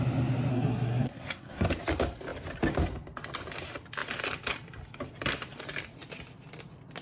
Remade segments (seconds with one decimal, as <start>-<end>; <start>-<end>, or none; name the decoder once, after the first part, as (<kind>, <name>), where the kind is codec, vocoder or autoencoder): 0.5-1.7 (codec, SNAC)